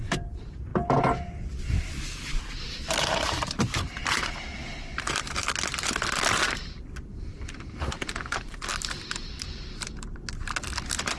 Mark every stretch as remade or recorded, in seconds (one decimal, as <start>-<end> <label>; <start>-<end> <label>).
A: 0.0-0.7 remade; 0.7-1.6 recorded; 1.6-5.4 remade; 5.4-6.6 recorded; 6.6-11.2 remade